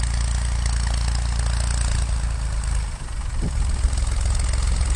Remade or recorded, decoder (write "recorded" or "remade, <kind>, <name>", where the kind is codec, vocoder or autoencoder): recorded